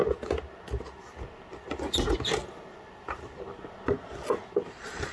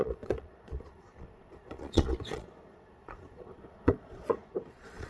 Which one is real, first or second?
first